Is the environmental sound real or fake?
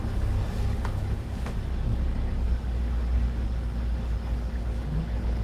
fake